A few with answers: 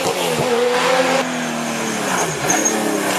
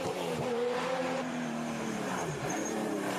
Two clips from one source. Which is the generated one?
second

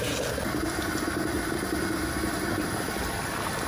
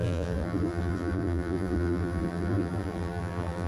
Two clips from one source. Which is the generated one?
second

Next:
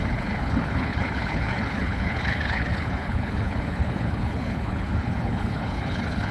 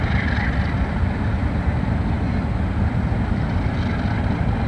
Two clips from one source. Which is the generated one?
first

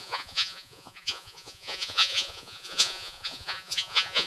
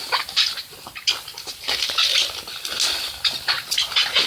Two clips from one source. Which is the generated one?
first